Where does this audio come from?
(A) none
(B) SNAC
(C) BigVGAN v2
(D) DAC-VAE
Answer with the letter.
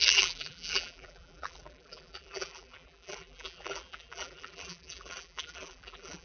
C